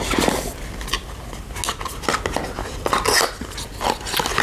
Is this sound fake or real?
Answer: real